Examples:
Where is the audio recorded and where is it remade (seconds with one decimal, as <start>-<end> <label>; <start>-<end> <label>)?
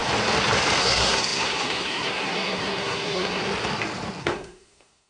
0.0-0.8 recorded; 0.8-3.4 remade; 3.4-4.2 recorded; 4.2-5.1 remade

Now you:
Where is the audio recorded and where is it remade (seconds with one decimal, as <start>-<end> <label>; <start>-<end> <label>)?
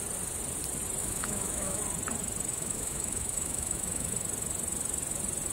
0.0-1.0 recorded; 1.0-1.8 remade; 1.8-2.5 recorded; 2.5-4.1 remade; 4.1-5.5 recorded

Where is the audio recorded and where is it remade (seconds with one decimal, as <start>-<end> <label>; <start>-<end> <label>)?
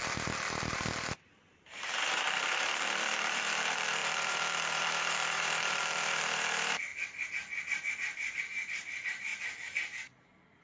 0.0-6.9 remade; 6.9-7.8 recorded; 7.8-9.3 remade; 9.3-10.6 recorded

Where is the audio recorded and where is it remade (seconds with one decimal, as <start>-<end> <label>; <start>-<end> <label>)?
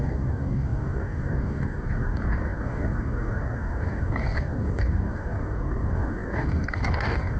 0.0-7.4 remade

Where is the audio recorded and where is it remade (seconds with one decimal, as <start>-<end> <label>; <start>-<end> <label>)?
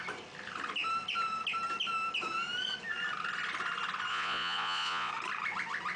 0.0-4.1 recorded; 4.1-5.1 remade; 5.1-6.0 recorded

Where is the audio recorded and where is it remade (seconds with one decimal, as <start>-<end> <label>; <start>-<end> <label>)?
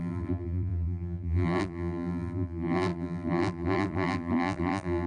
0.0-5.1 remade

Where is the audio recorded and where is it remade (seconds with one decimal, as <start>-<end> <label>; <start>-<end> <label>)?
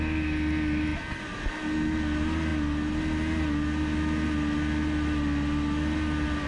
0.0-0.9 recorded; 0.9-1.5 remade; 1.5-6.5 recorded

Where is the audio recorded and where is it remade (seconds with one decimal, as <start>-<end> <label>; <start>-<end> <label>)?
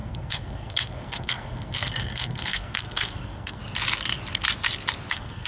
0.0-3.6 remade; 3.6-5.1 recorded; 5.1-5.5 remade